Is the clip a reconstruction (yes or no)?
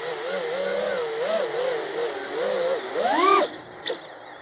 no